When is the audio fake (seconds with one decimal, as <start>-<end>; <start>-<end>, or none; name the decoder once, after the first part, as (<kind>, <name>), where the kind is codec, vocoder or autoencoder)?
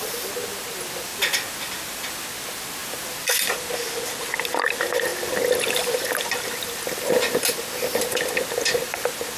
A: 1.1-2.2 (vocoder, BigVGAN v2); 2.8-3.8